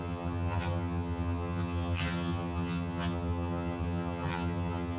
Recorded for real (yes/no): no